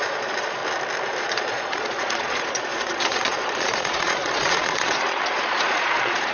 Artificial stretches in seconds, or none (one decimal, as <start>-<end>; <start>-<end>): 0.0-0.6; 1.2-6.3